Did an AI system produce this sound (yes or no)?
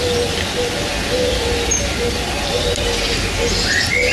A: yes